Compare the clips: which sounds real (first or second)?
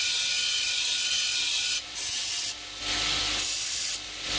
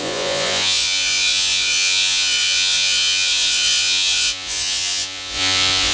first